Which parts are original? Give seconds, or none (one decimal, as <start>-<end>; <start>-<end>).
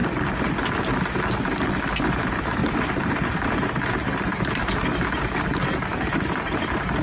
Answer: 0.0-2.2